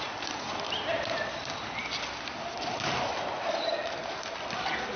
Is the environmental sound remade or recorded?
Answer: recorded